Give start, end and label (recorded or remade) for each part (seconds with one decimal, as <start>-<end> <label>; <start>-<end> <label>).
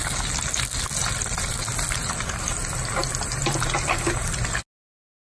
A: 0.0-5.3 recorded